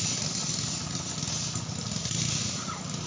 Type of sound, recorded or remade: recorded